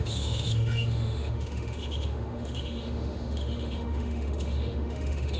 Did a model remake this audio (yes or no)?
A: yes